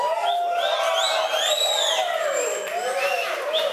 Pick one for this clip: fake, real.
real